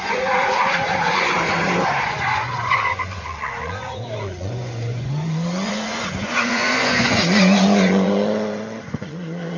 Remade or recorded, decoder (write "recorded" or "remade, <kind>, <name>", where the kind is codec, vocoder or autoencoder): remade, vocoder, Vocos